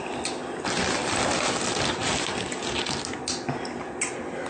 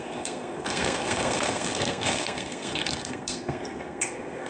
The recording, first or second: first